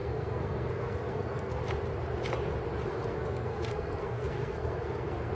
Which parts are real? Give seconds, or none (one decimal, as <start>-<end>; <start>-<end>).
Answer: 1.6-2.9